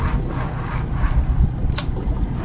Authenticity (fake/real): real